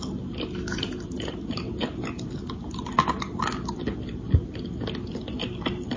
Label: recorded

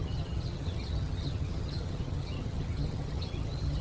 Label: remade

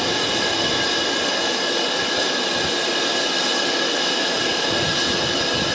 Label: recorded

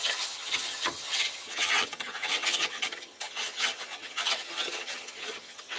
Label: remade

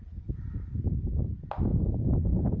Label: recorded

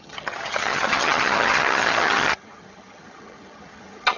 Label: remade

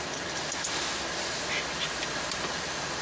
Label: recorded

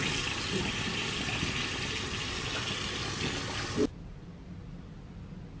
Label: recorded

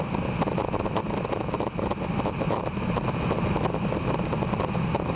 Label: recorded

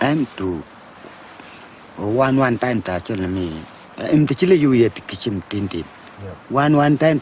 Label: recorded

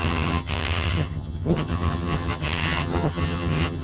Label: remade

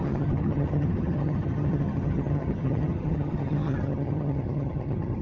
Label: remade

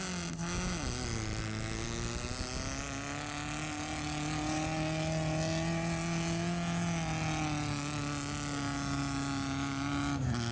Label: recorded